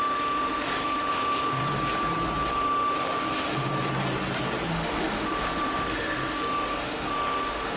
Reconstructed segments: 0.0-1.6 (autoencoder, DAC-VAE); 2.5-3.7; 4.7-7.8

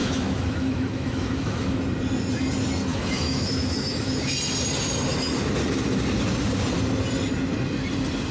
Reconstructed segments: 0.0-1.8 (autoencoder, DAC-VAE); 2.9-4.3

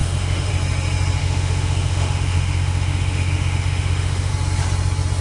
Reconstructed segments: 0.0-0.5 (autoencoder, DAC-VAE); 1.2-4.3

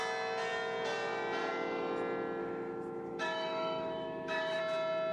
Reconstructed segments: 2.4-4.6 (autoencoder, DAC-VAE)

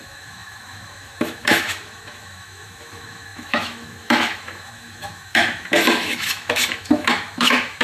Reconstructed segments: 0.0-7.8 (autoencoder, DAC-VAE)

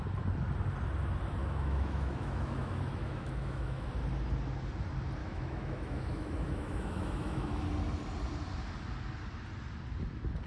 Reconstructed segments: 1.4-3.9 (autoencoder, DAC-VAE); 5.2-7.6